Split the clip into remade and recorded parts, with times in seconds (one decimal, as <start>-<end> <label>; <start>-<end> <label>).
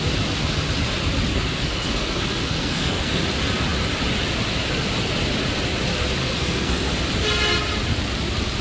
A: 0.0-1.3 recorded; 1.3-3.2 remade; 3.2-6.2 recorded; 6.2-7.0 remade; 7.0-8.6 recorded